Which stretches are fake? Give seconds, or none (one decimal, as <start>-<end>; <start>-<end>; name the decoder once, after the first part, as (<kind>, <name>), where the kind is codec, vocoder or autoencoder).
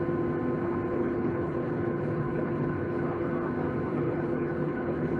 0.9-3.3 (codec, HILCodec); 3.9-5.2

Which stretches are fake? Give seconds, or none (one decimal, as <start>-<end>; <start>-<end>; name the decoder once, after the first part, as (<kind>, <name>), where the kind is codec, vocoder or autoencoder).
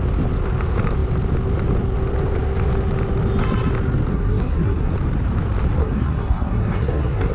4.1-4.9 (codec, SNAC); 5.8-7.3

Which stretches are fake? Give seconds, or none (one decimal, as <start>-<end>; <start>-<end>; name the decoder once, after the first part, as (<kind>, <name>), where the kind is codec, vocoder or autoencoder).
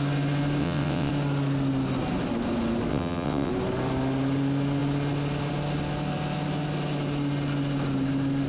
0.6-1.1 (vocoder, WaveNeXt); 2.9-3.5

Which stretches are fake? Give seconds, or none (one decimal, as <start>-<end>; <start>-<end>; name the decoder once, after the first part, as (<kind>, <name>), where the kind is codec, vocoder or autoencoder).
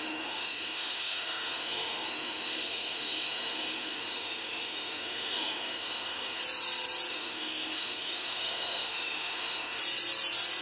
0.0-6.4 (autoencoder, DAC-VAE); 7.1-9.8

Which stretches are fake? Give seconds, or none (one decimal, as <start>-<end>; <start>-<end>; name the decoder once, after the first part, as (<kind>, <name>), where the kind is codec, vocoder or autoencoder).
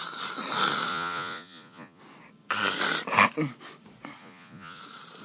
0.9-2.0 (vocoder, Vocos); 4.2-4.8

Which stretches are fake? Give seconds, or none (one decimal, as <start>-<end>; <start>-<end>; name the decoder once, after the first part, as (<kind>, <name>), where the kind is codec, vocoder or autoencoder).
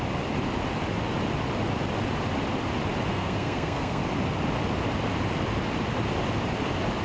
3.1-4.0 (codec, SNAC)